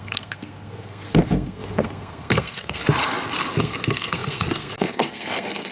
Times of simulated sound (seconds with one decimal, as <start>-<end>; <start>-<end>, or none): 0.0-2.8; 3.6-5.7